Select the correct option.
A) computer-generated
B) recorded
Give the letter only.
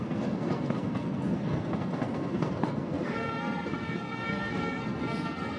A